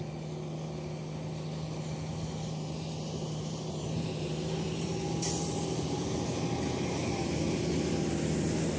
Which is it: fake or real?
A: real